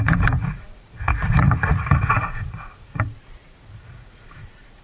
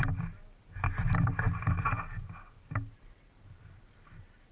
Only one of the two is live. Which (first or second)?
second